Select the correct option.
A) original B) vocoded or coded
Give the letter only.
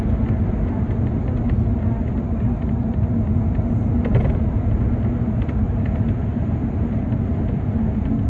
A